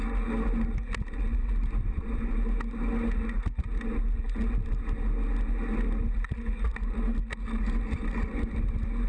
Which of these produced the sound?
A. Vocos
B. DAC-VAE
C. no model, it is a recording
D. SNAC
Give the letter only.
C